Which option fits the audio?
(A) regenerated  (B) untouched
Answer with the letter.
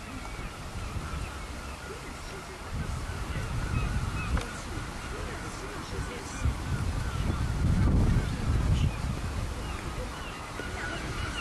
B